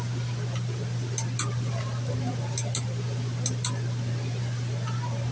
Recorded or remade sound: recorded